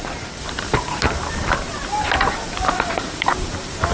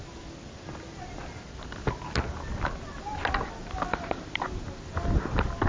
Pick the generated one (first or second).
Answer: first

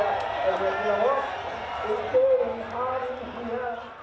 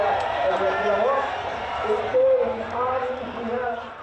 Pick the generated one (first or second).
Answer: second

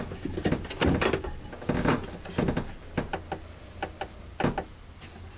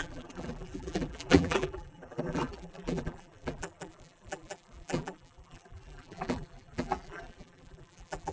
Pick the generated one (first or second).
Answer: second